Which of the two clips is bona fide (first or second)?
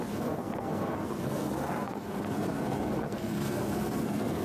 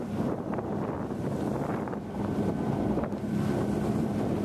second